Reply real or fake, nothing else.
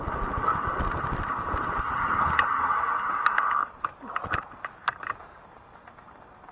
real